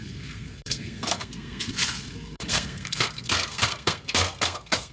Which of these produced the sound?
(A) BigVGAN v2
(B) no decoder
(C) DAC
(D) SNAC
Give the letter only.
D